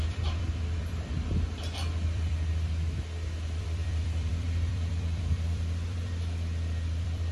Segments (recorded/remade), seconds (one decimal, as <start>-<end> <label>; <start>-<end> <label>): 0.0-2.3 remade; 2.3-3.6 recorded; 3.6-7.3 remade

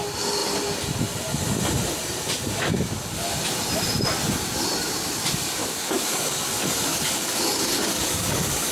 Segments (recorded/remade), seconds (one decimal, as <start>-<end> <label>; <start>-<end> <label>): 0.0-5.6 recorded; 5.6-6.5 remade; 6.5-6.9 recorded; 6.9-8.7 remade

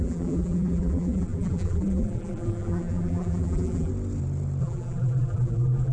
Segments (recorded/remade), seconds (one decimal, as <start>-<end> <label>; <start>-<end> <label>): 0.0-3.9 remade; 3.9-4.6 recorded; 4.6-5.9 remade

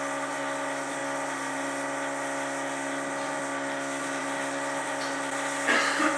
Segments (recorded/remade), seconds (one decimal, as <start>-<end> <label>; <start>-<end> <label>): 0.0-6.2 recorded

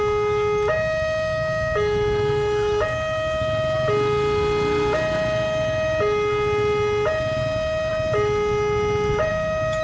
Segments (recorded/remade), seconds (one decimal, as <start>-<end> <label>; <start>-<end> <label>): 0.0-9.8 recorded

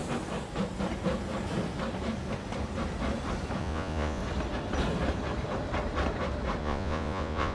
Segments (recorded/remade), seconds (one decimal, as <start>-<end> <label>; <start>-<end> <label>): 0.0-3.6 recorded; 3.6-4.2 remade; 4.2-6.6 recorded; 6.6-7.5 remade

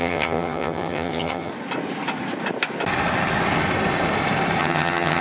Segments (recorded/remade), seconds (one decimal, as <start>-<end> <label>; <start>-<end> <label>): 0.0-1.5 remade; 1.5-4.6 recorded; 4.6-5.2 remade